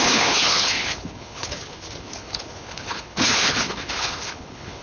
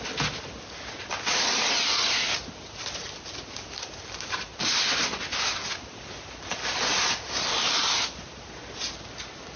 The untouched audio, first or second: second